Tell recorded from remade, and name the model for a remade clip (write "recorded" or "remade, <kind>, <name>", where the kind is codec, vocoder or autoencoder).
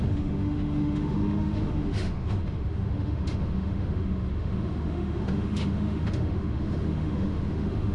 remade, autoencoder, DAC-VAE